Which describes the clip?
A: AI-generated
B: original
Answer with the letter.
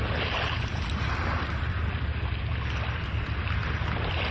B